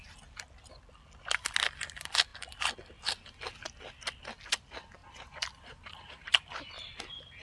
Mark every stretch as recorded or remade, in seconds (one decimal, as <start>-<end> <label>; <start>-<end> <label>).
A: 0.0-5.0 recorded; 5.0-6.7 remade; 6.7-7.4 recorded